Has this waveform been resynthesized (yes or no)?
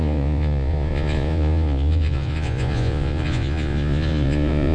yes